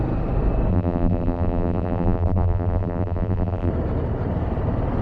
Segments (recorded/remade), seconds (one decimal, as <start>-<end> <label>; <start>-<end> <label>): 0.0-0.7 recorded; 0.7-3.7 remade; 3.7-5.0 recorded

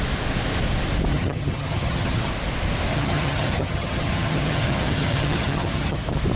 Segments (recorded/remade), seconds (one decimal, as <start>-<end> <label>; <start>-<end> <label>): 0.0-1.1 recorded; 1.1-2.3 remade; 2.3-2.9 recorded; 2.9-6.0 remade; 6.0-6.4 recorded

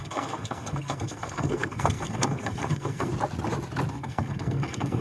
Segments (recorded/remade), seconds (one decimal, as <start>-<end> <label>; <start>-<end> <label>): 0.0-3.1 remade; 3.1-3.9 recorded; 3.9-5.0 remade

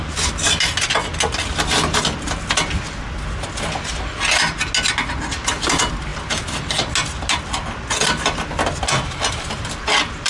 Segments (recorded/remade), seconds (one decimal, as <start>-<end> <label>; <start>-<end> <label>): 0.0-10.3 recorded

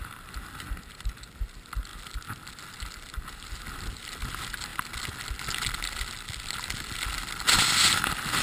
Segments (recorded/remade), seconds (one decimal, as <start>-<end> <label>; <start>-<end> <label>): 0.0-8.4 recorded

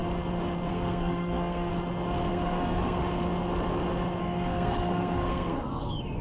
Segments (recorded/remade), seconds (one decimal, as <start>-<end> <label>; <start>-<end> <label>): 0.0-0.7 recorded; 0.7-1.7 remade; 1.7-2.3 recorded; 2.3-3.0 remade; 3.0-4.2 recorded; 4.2-6.2 remade

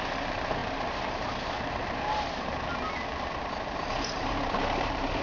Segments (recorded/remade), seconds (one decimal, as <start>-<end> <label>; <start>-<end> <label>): 0.0-2.5 remade; 2.5-3.4 recorded; 3.4-5.2 remade